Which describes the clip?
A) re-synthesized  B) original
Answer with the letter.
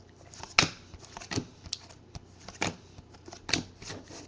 B